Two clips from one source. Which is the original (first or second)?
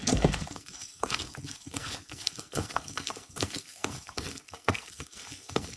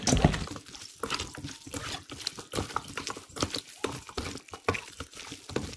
second